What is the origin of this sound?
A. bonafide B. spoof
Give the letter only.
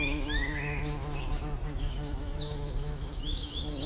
B